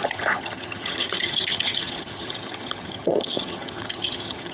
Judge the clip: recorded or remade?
remade